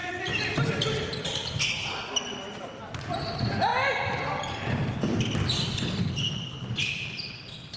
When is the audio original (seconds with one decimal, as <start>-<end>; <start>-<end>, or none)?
0.0-7.8